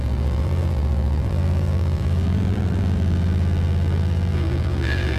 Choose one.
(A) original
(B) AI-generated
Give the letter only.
B